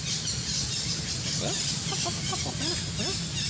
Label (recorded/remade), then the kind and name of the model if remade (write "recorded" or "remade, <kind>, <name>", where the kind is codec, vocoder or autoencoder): recorded